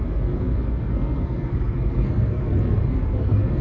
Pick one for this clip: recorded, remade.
remade